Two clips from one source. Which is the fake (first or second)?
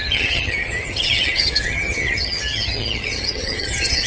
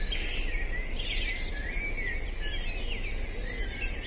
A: first